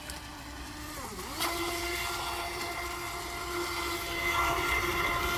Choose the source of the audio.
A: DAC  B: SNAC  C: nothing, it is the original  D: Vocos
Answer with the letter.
C